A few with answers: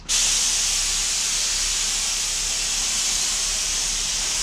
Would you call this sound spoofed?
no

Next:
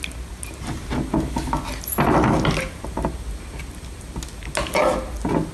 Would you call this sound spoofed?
no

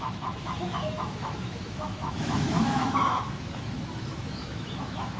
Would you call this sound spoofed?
yes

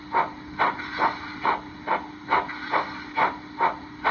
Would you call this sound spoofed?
no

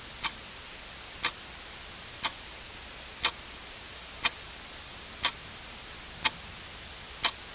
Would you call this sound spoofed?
no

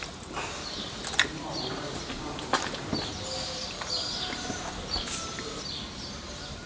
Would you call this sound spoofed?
no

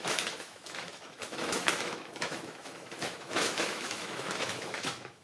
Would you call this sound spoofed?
yes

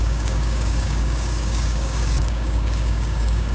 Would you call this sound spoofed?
yes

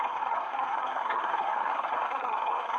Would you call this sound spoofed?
yes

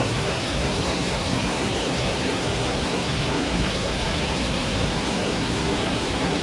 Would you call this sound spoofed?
yes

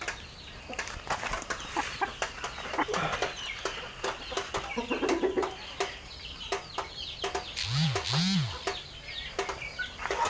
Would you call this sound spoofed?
no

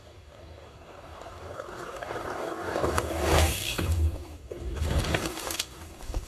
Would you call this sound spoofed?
yes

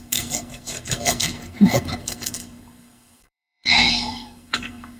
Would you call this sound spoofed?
yes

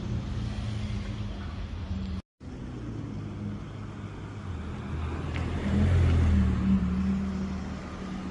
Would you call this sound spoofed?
no